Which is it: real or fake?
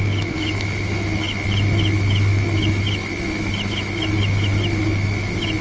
fake